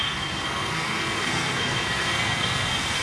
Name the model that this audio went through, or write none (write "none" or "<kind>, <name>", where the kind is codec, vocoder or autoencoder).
codec, SNAC